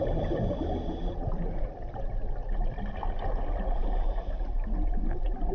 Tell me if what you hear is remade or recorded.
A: recorded